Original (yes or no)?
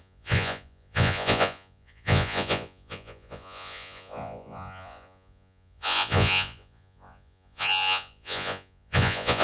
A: no